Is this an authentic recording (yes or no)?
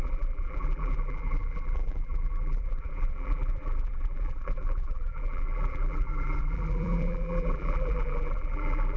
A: no